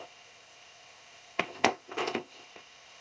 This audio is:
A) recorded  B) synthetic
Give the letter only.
B